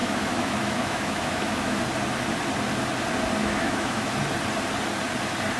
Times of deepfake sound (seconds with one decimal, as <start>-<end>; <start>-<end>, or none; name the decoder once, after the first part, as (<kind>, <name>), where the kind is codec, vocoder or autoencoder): 0.0-1.8 (autoencoder, DAC-VAE); 3.4-4.1